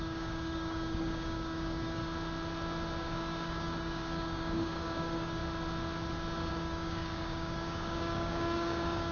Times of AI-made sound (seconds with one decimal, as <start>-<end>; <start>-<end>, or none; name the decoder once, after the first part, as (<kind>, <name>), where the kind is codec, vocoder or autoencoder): 0.0-2.0 (codec, DAC); 3.0-5.4; 6.5-9.1